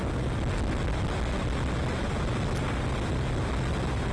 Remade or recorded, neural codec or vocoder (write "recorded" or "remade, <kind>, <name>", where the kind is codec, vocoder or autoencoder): recorded